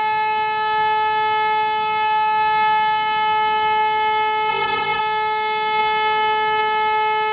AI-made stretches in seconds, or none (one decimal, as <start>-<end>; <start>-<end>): 4.5-5.0